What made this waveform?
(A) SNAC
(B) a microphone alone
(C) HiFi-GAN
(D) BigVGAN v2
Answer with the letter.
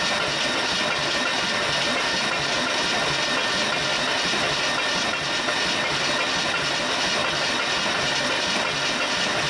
B